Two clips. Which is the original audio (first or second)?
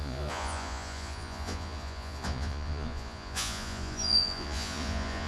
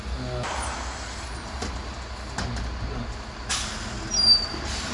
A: second